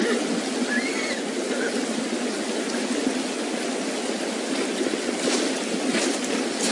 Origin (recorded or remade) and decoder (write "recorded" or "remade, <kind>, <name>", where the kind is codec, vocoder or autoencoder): recorded